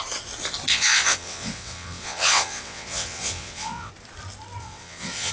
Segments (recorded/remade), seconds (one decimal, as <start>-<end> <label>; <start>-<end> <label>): 0.0-0.7 recorded; 0.7-3.9 remade; 3.9-4.6 recorded; 4.6-5.3 remade